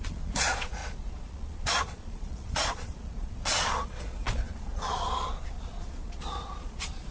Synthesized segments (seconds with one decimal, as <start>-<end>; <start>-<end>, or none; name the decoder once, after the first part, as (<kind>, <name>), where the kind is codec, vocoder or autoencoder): 0.0-7.1 (vocoder, Vocos)